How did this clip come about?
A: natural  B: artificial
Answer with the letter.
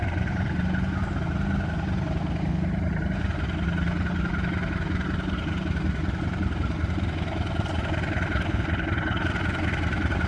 A